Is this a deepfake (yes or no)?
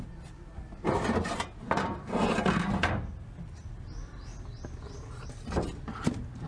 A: no